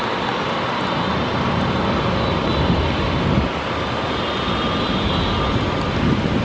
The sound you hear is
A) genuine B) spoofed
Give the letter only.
A